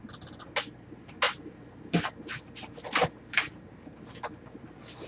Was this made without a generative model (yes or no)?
yes